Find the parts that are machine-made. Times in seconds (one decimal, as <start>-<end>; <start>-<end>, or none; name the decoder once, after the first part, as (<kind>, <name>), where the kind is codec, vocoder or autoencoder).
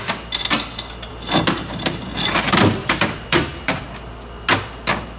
1.1-3.8 (vocoder, BigVGAN v2)